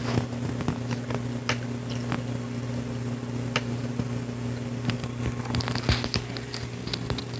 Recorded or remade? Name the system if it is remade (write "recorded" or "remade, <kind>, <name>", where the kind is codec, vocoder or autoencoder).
recorded